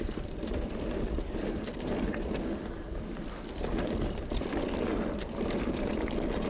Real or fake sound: real